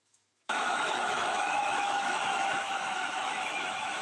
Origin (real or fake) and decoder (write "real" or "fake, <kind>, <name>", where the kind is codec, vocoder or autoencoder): fake, autoencoder, DAC-VAE